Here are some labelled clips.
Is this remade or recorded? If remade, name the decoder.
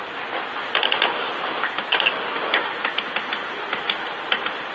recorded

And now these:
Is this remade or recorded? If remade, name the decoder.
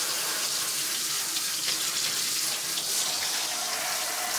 recorded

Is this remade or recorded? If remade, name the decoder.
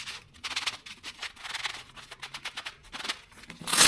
recorded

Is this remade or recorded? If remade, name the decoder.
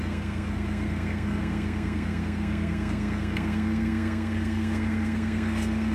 remade, codec, SNAC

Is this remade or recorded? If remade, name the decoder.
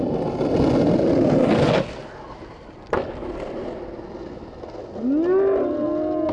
recorded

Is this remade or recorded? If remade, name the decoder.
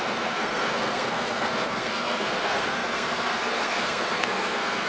remade, codec, SNAC